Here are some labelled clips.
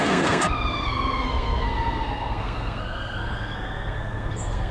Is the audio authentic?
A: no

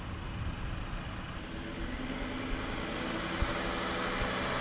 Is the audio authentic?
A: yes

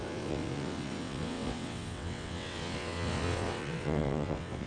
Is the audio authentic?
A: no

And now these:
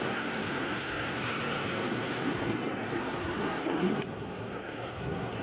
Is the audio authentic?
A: no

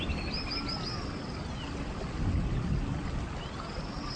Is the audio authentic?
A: yes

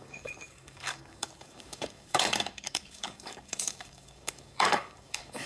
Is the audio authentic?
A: no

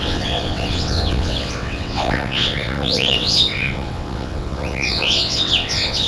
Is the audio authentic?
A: no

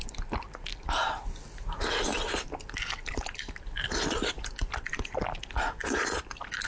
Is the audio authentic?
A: yes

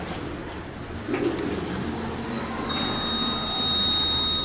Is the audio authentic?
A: yes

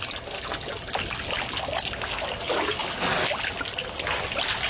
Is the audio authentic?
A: yes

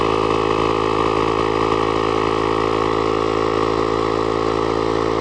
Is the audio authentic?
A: yes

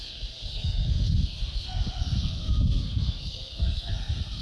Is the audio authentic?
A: no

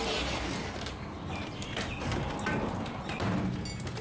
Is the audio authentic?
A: yes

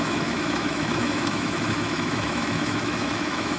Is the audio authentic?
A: no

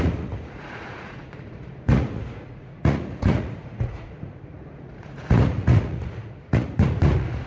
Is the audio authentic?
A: no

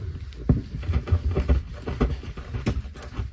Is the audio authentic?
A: yes